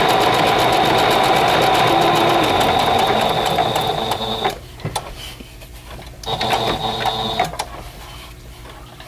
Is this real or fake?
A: real